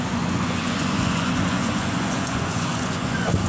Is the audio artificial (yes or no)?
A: yes